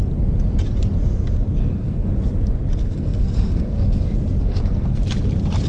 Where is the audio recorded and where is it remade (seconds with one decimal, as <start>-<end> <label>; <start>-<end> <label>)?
0.0-1.6 recorded; 1.6-2.1 remade; 2.1-2.8 recorded; 2.8-4.0 remade; 4.0-4.4 recorded; 4.4-5.0 remade; 5.0-5.7 recorded